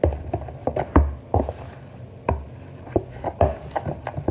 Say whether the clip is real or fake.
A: real